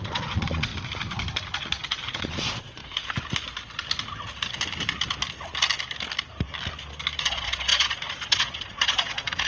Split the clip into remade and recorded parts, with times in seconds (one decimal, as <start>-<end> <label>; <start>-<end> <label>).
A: 0.0-0.7 remade; 0.7-2.1 recorded; 2.1-2.8 remade; 2.8-7.2 recorded; 7.2-9.5 remade

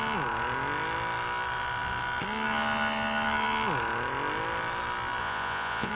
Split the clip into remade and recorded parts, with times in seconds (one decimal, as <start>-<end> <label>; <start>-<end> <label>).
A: 0.0-5.2 recorded; 5.2-5.9 remade

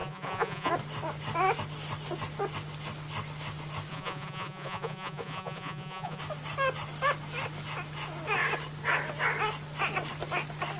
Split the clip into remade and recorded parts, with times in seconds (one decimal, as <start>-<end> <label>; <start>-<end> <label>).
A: 0.0-0.7 remade; 0.7-3.9 recorded; 3.9-6.2 remade; 6.2-10.8 recorded

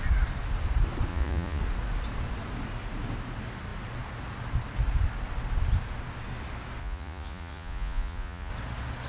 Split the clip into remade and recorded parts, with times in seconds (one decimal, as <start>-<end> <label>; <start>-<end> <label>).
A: 0.0-1.1 recorded; 1.1-1.6 remade; 1.6-6.8 recorded; 6.8-8.5 remade; 8.5-9.1 recorded

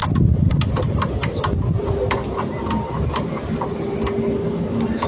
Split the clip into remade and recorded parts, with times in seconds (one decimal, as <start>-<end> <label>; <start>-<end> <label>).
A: 0.0-5.1 recorded

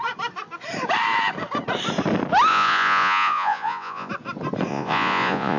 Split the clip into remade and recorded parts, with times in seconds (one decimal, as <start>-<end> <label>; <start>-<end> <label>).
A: 0.0-2.5 recorded; 2.5-4.1 remade; 4.1-4.7 recorded; 4.7-5.6 remade

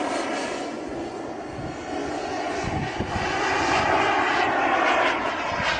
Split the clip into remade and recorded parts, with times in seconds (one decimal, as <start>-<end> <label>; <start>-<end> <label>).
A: 0.0-0.4 recorded; 0.4-1.2 remade; 1.2-2.0 recorded; 2.0-4.0 remade; 4.0-5.8 recorded